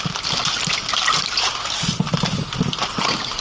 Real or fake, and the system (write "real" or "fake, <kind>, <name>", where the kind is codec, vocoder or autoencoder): real